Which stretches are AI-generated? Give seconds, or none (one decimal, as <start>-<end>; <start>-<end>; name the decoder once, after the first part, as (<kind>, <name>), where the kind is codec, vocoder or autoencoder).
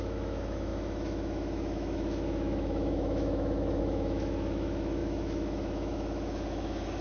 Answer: 0.0-7.0 (autoencoder, DAC-VAE)